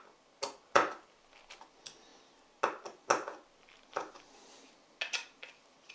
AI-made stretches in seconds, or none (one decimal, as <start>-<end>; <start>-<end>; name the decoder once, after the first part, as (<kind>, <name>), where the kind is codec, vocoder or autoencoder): none